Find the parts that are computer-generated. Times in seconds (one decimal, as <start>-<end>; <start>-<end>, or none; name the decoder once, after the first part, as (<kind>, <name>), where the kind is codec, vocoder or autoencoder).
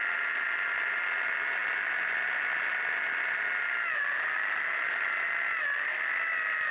none